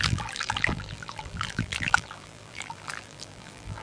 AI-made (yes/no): yes